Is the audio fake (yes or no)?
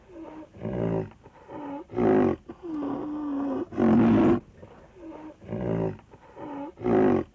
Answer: no